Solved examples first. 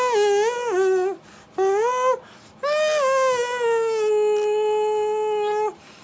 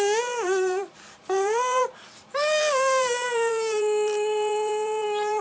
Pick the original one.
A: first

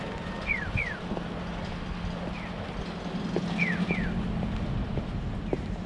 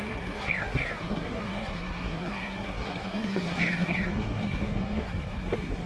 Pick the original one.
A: first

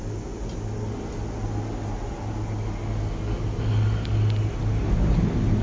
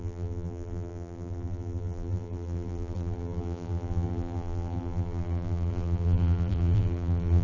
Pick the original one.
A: first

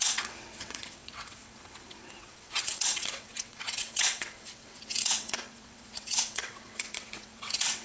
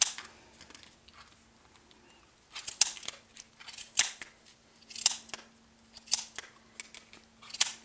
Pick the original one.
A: second